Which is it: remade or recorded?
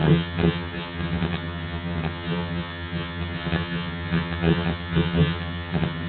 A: remade